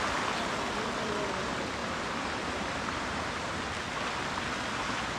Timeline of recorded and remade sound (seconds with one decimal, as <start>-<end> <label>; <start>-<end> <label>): 0.0-1.8 recorded; 1.8-3.7 remade; 3.7-5.2 recorded